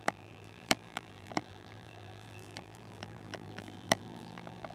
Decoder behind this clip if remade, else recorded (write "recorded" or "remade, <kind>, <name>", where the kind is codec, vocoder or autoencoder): remade, vocoder, BigVGAN v2